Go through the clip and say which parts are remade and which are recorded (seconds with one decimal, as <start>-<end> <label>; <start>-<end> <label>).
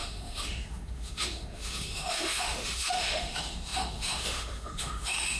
0.0-5.4 remade